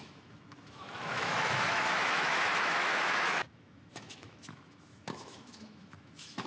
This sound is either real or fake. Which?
fake